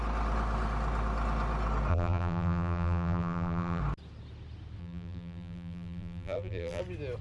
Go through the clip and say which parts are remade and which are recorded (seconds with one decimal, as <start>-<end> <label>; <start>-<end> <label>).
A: 0.0-1.9 recorded; 1.9-3.8 remade; 3.8-4.8 recorded; 4.8-6.8 remade; 6.8-7.2 recorded